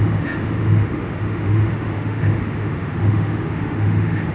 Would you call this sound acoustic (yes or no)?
no